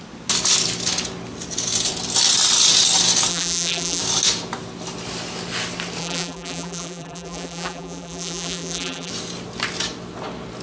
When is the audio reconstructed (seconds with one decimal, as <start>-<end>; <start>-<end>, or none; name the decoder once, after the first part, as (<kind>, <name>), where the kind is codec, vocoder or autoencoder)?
3.3-4.0 (vocoder, BigVGAN v2); 6.0-9.1